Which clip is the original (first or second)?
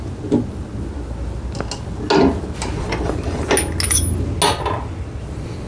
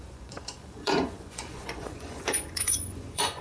first